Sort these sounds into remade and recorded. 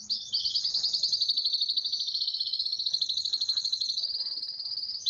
remade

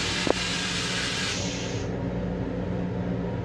recorded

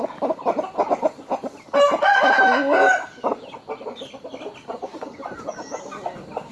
recorded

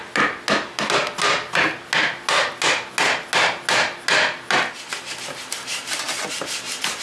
recorded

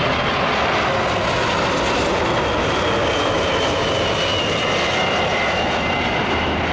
recorded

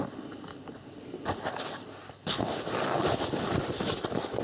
recorded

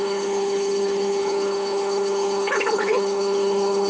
remade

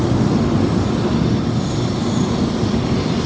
recorded